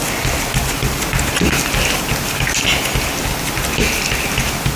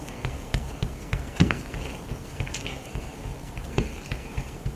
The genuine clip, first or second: first